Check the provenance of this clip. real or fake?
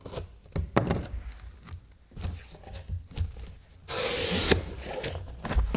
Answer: real